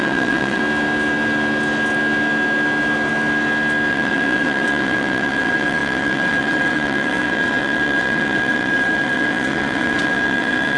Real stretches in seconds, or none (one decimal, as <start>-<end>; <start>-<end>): 0.6-3.9